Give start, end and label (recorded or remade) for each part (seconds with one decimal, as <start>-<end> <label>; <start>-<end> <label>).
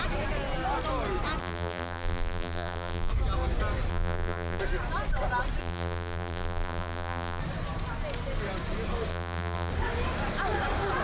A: 0.0-1.4 recorded; 1.4-3.1 remade; 3.1-3.9 recorded; 3.9-4.6 remade; 4.6-5.6 recorded; 5.6-7.4 remade; 7.4-9.1 recorded; 9.1-9.7 remade; 9.7-11.0 recorded